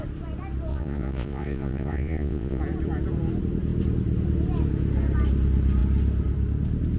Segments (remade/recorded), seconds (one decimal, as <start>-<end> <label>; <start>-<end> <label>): 0.0-0.7 recorded; 0.7-2.6 remade; 2.6-7.0 recorded